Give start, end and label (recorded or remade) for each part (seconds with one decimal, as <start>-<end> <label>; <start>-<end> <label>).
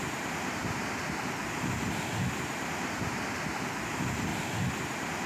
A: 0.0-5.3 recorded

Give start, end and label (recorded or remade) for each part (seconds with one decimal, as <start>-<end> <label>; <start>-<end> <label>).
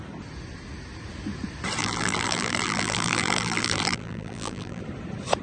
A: 0.0-1.8 recorded; 1.8-4.8 remade; 4.8-5.4 recorded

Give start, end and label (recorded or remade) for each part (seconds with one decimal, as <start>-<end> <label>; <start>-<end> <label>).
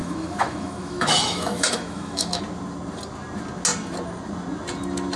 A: 0.0-2.4 remade; 2.4-5.2 recorded